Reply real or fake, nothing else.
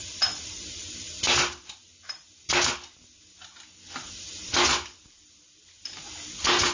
real